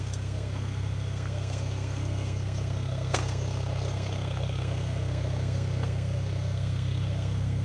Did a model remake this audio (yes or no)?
yes